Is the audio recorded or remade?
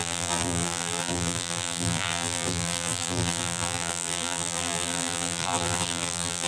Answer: remade